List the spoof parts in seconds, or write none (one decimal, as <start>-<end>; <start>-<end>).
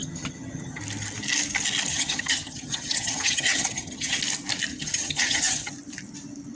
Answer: 0.0-0.8; 1.9-4.2; 4.7-5.7